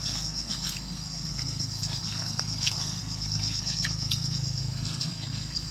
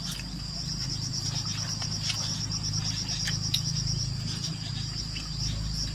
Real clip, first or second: second